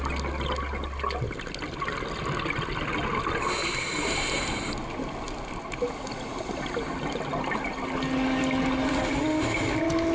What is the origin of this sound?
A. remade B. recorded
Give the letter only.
B